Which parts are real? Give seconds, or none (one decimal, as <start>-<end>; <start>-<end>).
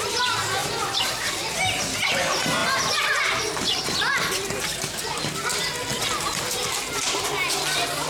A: 0.0-2.6; 3.4-5.9; 6.4-8.1